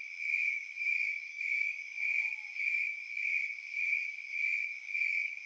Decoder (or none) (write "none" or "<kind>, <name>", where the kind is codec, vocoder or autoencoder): codec, DAC